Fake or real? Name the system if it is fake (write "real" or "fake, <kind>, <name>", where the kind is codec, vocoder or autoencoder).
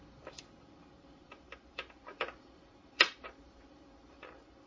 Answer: fake, vocoder, BigVGAN v2